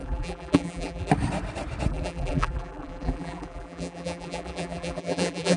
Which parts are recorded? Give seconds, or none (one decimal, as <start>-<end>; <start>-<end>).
1.1-1.9